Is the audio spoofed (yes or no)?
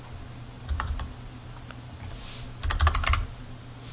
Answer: no